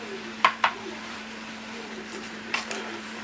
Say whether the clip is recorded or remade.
remade